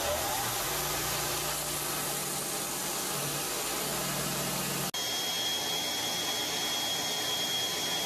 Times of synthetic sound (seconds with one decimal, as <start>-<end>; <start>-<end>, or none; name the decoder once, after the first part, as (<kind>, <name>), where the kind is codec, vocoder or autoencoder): none